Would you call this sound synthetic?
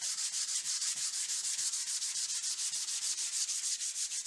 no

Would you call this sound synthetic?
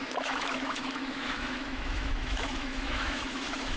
yes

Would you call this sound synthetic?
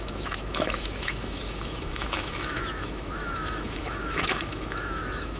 yes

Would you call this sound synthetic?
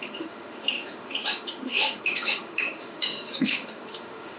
yes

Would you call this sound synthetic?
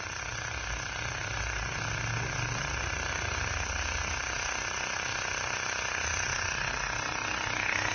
no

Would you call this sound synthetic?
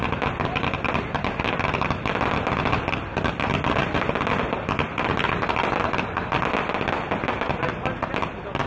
no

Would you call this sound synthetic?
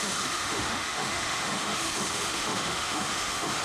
yes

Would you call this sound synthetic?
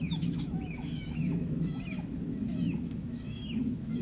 yes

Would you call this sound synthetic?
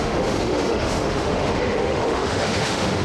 yes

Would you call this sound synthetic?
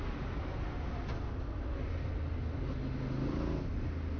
no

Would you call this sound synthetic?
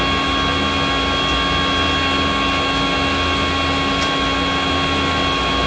no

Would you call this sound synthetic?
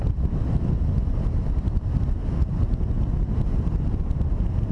no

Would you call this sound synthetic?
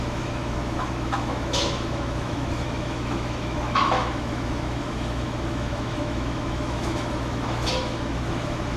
yes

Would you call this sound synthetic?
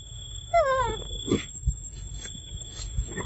yes